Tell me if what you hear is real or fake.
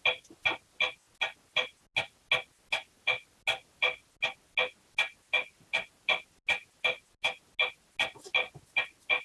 real